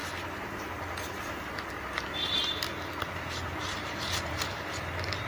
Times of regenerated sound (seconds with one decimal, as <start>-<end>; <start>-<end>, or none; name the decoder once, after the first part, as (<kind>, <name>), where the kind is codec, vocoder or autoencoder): 3.5-4.4 (vocoder, BigVGAN v2)